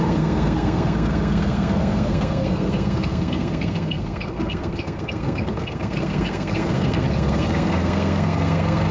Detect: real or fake fake